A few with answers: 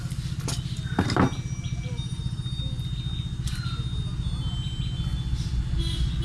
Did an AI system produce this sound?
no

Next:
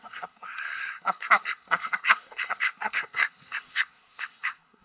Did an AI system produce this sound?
yes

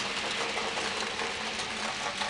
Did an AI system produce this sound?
no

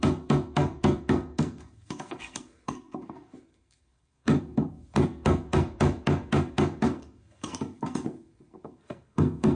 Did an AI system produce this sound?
yes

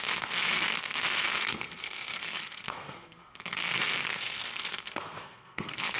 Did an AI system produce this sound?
yes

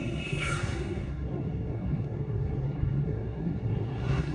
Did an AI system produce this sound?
yes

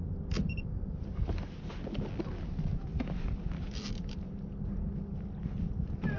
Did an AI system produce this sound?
no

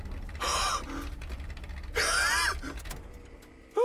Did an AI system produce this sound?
no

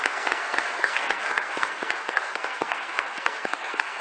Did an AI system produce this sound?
yes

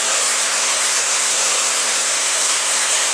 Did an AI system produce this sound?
yes